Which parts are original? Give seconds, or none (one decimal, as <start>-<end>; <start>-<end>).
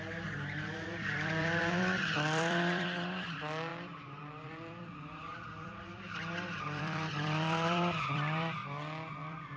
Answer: 8.6-9.2